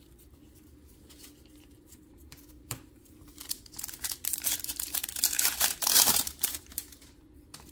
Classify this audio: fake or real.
fake